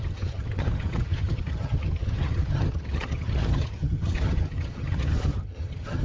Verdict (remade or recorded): remade